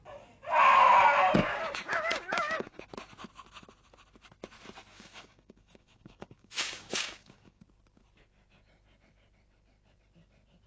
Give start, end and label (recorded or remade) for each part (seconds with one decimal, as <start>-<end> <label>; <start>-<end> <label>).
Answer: 0.0-1.4 recorded; 1.4-2.8 remade; 2.8-4.9 recorded; 4.9-7.6 remade; 7.6-10.7 recorded